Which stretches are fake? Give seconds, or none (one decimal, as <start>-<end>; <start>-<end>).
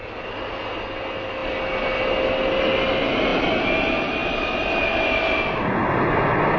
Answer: none